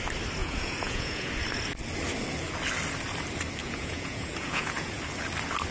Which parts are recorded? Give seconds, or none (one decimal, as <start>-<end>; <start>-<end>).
0.0-0.4; 1.3-3.6; 5.0-5.7

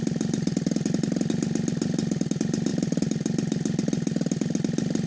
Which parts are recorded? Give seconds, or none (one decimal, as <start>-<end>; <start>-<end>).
0.0-5.1

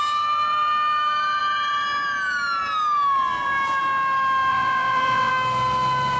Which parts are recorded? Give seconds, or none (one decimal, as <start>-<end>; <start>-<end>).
0.0-4.5; 5.3-6.2